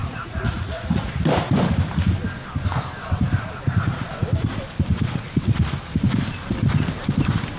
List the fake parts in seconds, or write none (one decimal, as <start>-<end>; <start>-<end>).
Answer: 0.0-1.1